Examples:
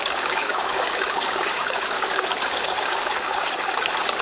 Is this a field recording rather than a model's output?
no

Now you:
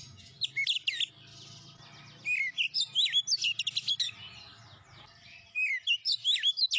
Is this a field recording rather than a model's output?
yes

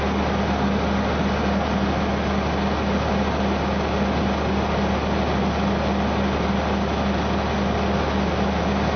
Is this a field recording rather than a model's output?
yes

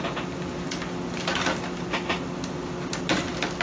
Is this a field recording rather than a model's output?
yes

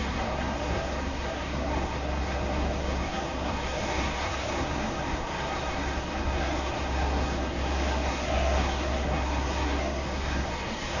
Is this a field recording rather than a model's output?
no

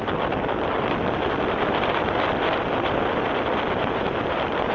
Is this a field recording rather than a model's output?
yes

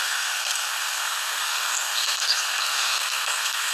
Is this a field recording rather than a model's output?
no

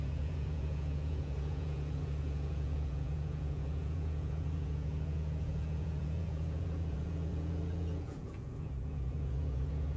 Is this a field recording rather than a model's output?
no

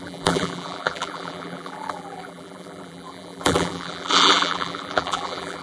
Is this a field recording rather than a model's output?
no